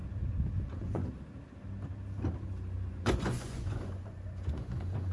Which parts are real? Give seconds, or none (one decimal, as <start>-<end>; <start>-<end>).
0.0-0.6; 1.0-2.9